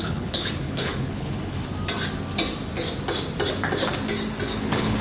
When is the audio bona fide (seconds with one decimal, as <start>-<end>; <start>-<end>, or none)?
1.6-4.6